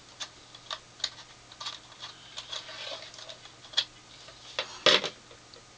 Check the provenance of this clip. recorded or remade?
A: recorded